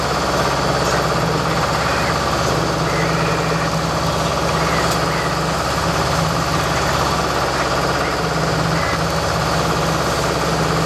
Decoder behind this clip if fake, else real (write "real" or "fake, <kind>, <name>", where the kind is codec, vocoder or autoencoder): real